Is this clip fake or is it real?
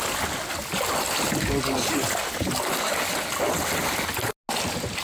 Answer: real